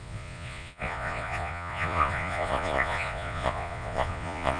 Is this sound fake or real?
fake